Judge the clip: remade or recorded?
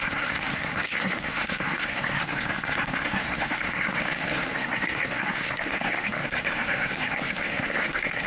remade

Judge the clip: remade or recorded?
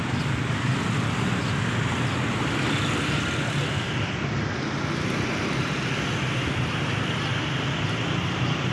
recorded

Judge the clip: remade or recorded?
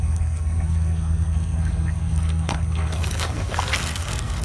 remade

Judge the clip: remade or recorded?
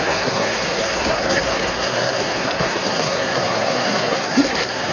remade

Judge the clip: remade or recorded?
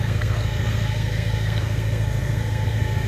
remade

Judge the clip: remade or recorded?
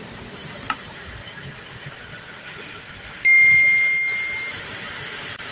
recorded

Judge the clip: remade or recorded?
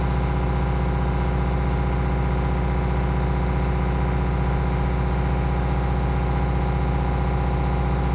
recorded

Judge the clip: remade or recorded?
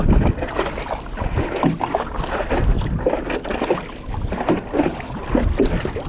recorded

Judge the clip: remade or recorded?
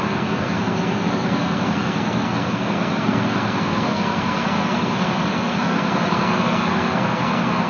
remade